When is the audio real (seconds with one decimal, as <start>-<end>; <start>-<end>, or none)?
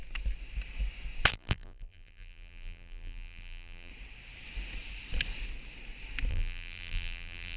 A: 0.0-1.3; 3.9-6.3